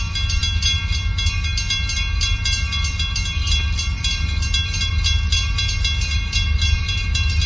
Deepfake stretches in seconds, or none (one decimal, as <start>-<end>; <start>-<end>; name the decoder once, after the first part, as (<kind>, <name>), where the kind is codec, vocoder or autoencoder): none